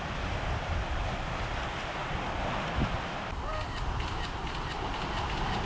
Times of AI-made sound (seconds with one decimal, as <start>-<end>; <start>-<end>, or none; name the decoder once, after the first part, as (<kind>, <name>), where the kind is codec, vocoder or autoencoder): none